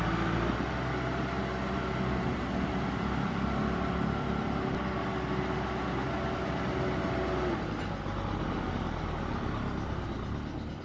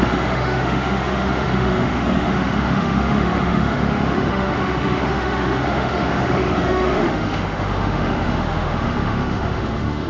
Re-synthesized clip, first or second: second